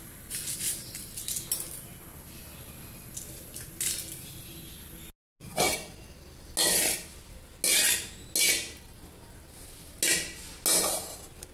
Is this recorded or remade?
recorded